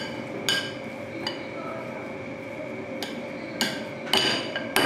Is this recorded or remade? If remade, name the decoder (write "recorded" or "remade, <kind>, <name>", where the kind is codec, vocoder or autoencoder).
recorded